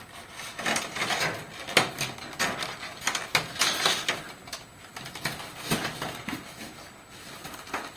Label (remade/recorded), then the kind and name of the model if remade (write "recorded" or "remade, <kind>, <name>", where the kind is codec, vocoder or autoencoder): recorded